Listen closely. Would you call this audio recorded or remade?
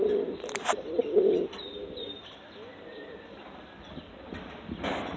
remade